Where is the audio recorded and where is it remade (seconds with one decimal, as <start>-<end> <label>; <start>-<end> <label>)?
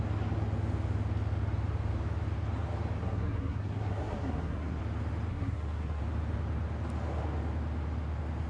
0.0-3.0 recorded; 3.0-4.8 remade; 4.8-5.3 recorded; 5.3-6.0 remade; 6.0-8.5 recorded